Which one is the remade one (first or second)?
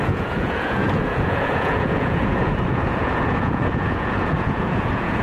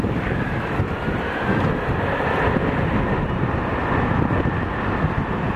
first